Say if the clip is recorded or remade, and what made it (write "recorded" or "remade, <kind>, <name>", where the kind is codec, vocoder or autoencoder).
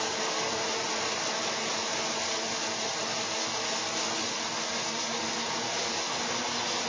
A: recorded